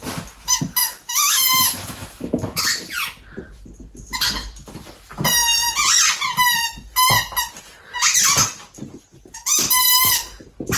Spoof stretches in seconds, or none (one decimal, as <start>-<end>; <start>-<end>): 0.8-2.6